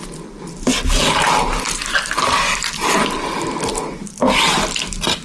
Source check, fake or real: real